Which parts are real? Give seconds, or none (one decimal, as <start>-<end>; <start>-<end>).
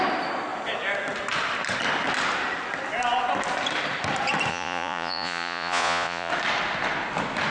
0.0-4.5; 6.3-7.5